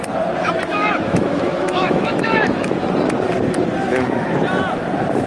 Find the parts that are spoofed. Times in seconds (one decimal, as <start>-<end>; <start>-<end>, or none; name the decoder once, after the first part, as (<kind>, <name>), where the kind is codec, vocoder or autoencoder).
0.7-2.7 (autoencoder, DAC-VAE)